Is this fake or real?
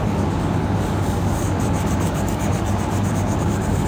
fake